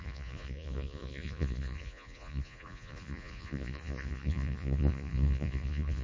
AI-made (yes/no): yes